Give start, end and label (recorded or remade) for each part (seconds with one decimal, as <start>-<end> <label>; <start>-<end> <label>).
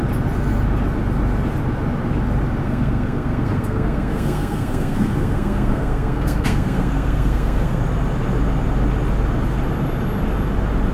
0.0-2.6 recorded; 2.6-7.8 remade; 7.8-10.9 recorded